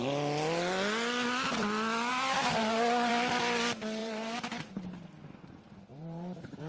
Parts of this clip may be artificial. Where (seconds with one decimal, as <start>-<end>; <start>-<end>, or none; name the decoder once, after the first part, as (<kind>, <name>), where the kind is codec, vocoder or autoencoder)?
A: 2.1-3.1 (vocoder, BigVGAN v2); 4.0-4.7; 5.9-6.7